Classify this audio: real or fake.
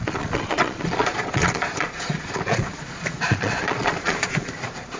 fake